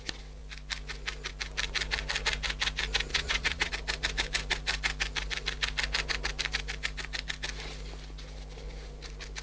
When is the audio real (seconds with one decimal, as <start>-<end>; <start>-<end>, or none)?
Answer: 0.0-3.1; 3.7-9.4